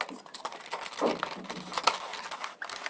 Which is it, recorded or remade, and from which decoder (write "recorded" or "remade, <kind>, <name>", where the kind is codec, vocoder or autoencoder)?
recorded